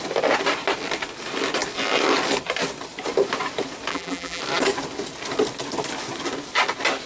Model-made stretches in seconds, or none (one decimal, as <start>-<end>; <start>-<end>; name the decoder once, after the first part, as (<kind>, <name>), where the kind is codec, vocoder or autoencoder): 3.9-4.4 (vocoder, BigVGAN v2)